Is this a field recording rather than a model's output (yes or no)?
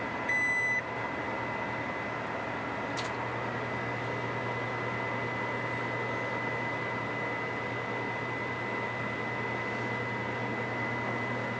yes